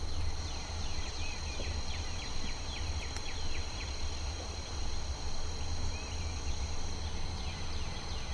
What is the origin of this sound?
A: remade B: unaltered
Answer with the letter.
B